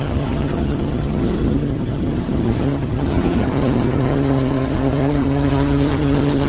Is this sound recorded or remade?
remade